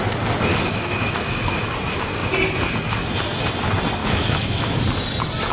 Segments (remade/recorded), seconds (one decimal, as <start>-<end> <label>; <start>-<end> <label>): 0.0-0.5 recorded; 0.5-1.7 remade; 1.7-4.0 recorded; 4.0-4.8 remade; 4.8-5.5 recorded